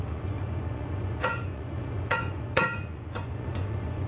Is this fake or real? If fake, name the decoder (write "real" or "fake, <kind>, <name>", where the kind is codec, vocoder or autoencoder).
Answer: fake, vocoder, Vocos